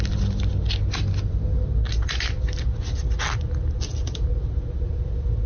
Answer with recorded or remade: recorded